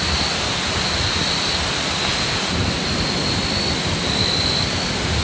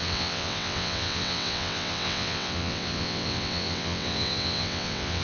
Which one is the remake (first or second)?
second